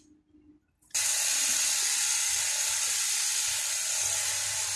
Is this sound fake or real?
real